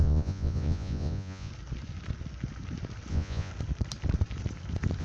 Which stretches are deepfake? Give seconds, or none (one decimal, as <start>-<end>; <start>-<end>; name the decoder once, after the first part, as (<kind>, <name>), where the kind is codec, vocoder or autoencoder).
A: 0.0-1.5 (vocoder, Vocos); 3.1-3.5